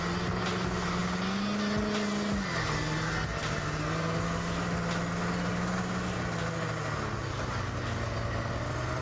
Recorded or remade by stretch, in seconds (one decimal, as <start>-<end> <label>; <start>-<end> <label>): 0.0-9.0 recorded